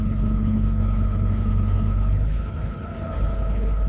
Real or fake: fake